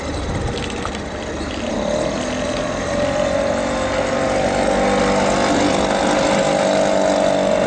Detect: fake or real real